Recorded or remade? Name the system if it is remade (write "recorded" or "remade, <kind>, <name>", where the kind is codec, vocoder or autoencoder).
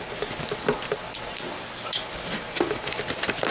recorded